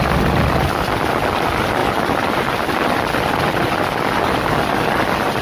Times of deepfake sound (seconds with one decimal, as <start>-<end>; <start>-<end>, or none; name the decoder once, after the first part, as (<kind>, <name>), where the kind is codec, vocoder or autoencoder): none